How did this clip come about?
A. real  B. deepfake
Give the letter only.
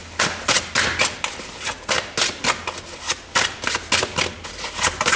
A